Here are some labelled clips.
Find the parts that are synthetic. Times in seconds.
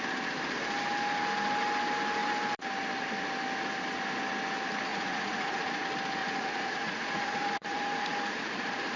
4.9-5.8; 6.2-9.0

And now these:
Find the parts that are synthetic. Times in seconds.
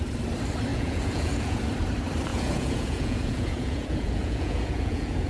0.7-1.6; 2.3-5.3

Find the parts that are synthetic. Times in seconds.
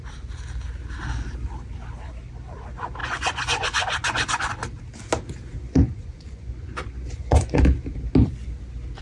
3.0-4.5; 5.6-7.6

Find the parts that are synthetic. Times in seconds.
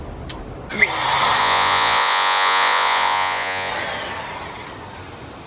1.4-3.7